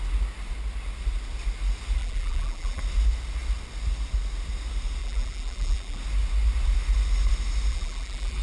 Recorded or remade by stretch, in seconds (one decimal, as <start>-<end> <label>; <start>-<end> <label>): 0.0-2.0 recorded; 2.0-2.8 remade; 2.8-5.0 recorded; 5.0-6.0 remade; 6.0-7.7 recorded; 7.7-8.4 remade